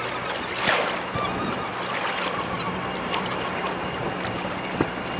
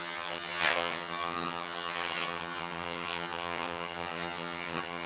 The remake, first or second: second